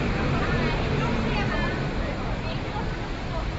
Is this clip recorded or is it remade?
remade